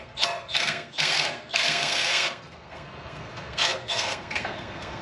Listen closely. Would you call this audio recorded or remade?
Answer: remade